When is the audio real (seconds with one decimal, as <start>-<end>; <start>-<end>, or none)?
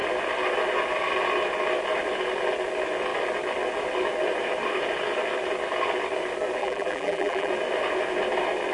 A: 0.0-6.6; 7.5-8.7